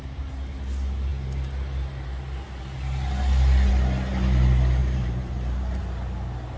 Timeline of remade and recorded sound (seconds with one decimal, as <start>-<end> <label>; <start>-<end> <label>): 0.0-4.8 recorded; 4.8-5.8 remade; 5.8-6.6 recorded